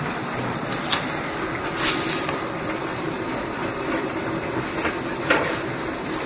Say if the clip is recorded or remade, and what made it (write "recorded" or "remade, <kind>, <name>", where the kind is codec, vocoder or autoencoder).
recorded